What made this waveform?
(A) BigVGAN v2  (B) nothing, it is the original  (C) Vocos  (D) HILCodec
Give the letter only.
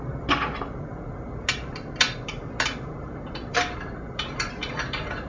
B